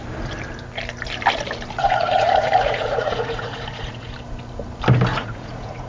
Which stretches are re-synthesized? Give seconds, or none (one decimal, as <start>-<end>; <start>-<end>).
1.8-4.1; 5.1-5.9